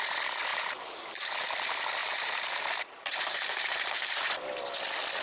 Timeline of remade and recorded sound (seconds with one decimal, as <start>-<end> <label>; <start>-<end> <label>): 0.0-0.5 recorded; 0.5-1.3 remade; 1.3-2.0 recorded; 2.0-4.3 remade; 4.3-5.2 recorded